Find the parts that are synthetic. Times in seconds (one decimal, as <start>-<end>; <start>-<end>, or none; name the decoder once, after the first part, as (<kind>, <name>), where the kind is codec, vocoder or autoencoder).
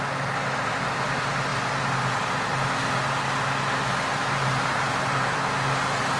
none